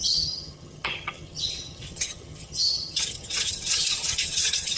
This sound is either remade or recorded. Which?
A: remade